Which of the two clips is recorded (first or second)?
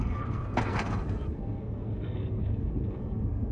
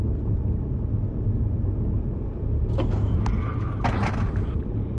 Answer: second